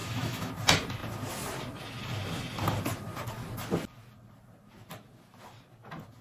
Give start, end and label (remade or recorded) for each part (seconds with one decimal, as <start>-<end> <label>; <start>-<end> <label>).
0.0-0.5 remade; 0.5-6.2 recorded